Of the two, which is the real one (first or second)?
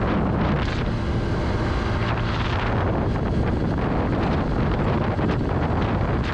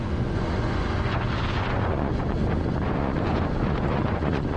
first